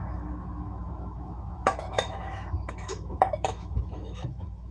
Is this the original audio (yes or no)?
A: no